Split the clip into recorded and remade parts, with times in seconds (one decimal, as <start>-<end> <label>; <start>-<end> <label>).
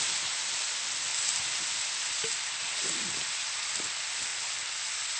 0.0-5.2 recorded